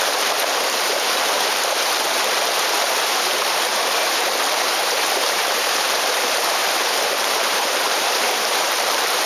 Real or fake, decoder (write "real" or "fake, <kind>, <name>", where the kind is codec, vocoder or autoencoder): fake, vocoder, BigVGAN v2